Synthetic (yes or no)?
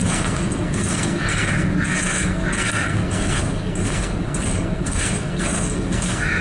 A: yes